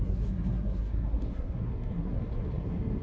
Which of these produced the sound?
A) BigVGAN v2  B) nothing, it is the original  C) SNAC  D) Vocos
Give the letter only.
C